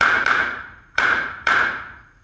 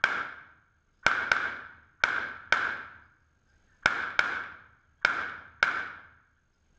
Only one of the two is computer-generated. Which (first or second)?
first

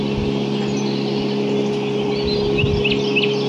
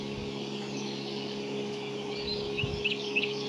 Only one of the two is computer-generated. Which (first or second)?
second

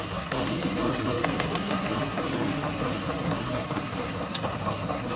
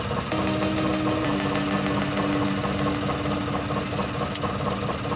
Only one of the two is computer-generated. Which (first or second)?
first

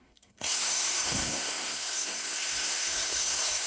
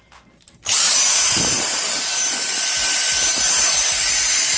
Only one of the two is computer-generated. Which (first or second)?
first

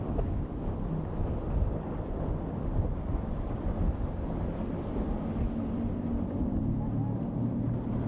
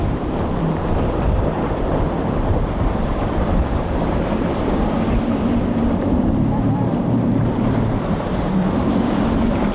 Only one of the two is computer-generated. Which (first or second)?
second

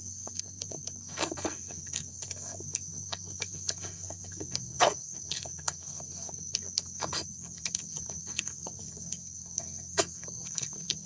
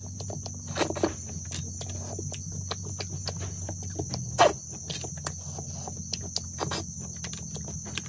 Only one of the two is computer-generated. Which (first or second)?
first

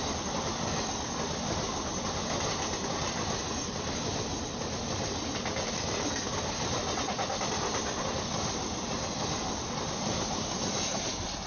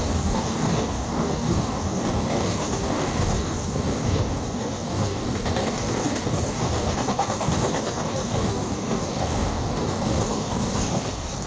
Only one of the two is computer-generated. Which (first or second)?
second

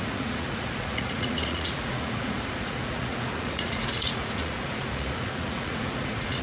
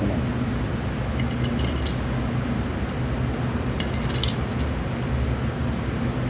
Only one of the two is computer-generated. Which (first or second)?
first